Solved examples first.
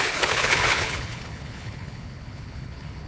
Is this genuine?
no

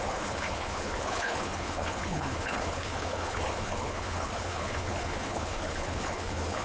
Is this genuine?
no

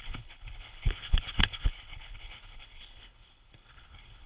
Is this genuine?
no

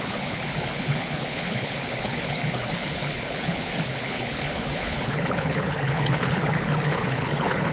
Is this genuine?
no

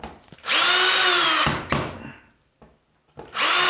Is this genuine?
yes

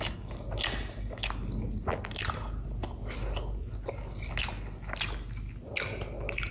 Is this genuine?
yes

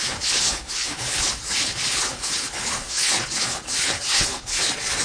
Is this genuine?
no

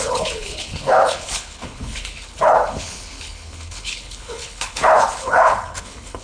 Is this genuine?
no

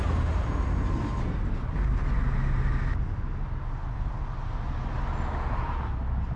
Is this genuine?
yes